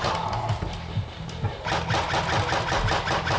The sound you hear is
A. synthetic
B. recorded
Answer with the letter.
B